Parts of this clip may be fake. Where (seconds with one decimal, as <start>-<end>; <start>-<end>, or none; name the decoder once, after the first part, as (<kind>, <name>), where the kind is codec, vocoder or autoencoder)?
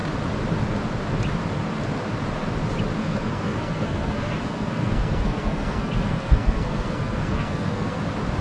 3.0-8.0 (codec, SNAC)